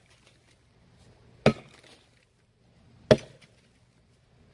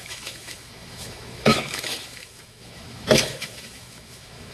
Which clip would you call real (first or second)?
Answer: first